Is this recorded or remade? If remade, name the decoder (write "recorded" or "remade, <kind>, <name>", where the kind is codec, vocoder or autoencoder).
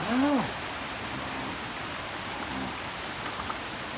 recorded